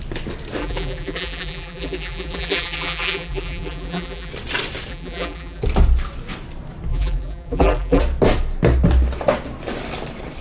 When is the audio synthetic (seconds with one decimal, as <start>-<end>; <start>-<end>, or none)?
0.6-4.3; 4.9-5.6; 6.9-8.0